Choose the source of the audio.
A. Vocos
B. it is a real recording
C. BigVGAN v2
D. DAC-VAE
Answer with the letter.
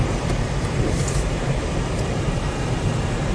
C